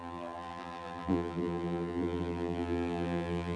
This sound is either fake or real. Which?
fake